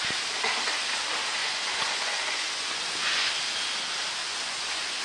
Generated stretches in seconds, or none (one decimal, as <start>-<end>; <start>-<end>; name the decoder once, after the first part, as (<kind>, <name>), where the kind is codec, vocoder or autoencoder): 1.4-3.3 (vocoder, Vocos); 4.2-5.0